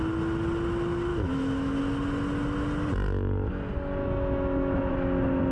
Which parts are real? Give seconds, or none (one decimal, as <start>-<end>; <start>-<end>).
0.0-1.1; 1.8-4.0; 4.9-5.5